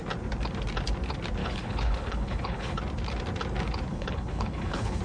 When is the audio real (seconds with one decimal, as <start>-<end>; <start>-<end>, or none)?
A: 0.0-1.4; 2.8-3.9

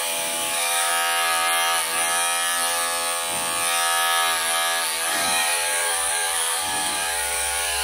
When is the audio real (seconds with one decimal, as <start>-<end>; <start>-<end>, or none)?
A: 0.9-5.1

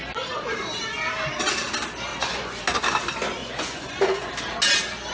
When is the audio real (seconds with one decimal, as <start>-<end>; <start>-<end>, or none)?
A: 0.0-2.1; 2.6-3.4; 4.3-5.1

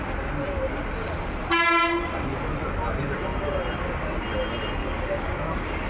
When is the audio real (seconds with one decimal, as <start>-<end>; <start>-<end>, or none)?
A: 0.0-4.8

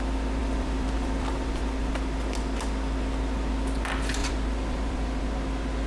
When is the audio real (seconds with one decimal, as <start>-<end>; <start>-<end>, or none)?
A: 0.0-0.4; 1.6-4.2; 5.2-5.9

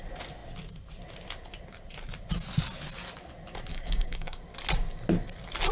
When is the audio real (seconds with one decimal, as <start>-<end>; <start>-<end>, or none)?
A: 0.0-3.7; 4.4-5.7

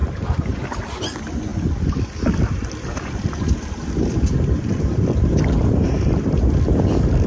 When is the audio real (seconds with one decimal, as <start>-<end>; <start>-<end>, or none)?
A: none